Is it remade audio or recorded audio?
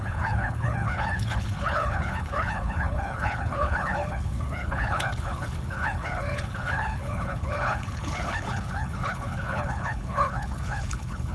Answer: remade